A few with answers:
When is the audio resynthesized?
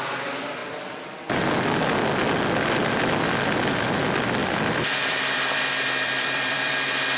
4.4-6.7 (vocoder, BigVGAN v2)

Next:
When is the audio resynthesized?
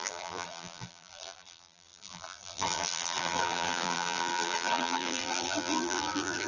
0.0-6.5 (vocoder, BigVGAN v2)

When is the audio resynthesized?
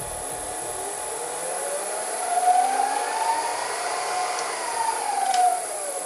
0.0-3.5 (vocoder, BigVGAN v2); 5.5-6.1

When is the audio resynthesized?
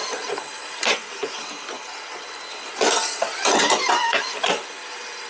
0.0-3.2 (vocoder, BigVGAN v2)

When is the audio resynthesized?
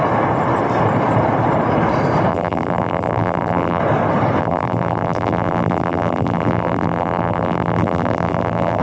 2.3-3.8 (vocoder, BigVGAN v2); 4.4-8.8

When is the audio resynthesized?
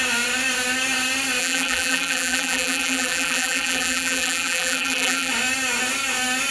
1.4-5.3 (vocoder, BigVGAN v2)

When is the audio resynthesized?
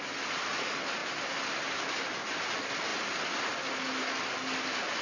none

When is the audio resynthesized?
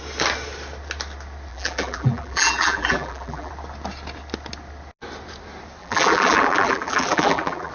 1.5-3.5 (vocoder, BigVGAN v2); 5.8-7.7